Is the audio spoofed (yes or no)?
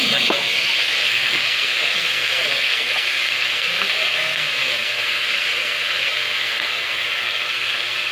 yes